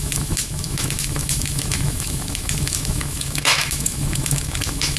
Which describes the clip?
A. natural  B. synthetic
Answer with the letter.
B